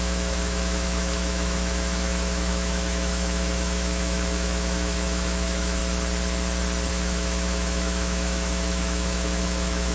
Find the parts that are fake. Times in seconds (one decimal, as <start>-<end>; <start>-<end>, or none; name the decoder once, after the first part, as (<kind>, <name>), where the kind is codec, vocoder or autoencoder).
0.0-5.8 (autoencoder, DAC-VAE); 6.9-9.9